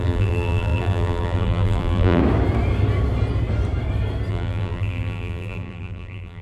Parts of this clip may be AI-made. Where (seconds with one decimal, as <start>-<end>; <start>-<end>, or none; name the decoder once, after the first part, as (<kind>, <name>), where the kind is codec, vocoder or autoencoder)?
0.0-2.2 (vocoder, BigVGAN v2); 4.3-6.4